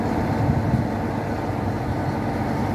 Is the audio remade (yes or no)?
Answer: no